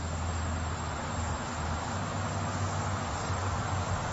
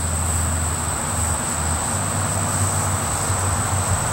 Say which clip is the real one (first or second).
second